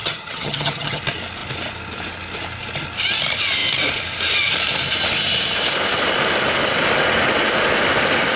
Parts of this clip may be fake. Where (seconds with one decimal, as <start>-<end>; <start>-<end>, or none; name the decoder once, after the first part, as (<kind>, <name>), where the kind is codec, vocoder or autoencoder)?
0.0-1.0 (vocoder, HiFi-GAN)